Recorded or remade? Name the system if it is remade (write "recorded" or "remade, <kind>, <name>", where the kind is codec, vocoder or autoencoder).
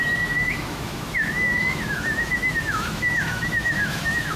remade, autoencoder, DAC-VAE